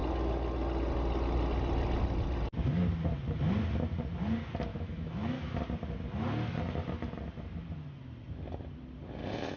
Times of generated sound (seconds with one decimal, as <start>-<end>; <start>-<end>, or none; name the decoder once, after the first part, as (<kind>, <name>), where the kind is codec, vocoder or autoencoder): 4.7-5.6 (autoencoder, DAC-VAE)